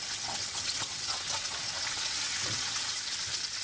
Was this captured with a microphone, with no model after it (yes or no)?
no